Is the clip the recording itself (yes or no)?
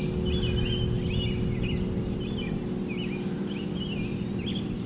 yes